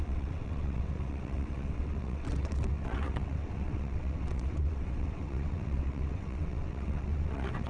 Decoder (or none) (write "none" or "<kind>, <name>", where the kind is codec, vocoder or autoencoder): vocoder, WaveNeXt